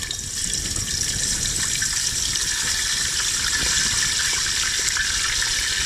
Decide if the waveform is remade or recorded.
recorded